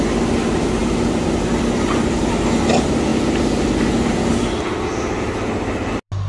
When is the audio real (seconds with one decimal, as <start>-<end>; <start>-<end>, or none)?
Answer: 0.0-6.3